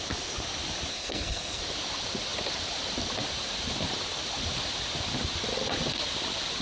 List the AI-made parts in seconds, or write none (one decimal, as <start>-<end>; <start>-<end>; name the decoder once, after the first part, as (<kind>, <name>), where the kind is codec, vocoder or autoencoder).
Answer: 0.9-1.6 (codec, SNAC)